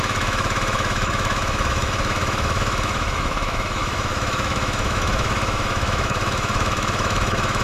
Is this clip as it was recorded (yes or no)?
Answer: no